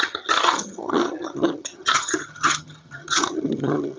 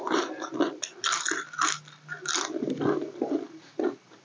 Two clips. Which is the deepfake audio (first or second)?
first